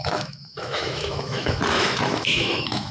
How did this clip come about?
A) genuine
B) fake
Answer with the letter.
B